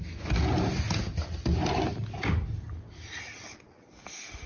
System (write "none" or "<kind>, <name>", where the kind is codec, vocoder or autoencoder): none